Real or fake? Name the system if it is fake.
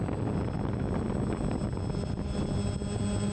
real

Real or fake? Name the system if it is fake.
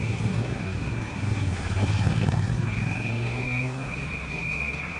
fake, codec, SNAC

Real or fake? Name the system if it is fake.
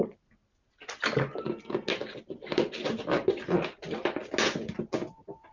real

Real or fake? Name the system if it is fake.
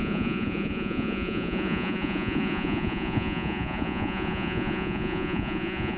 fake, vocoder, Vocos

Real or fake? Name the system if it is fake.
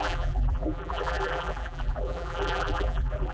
fake, vocoder, BigVGAN v2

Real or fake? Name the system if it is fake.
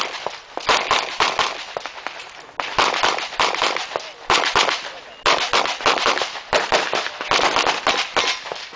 real